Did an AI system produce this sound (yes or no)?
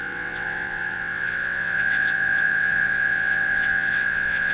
yes